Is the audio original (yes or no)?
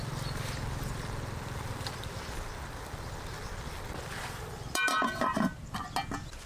yes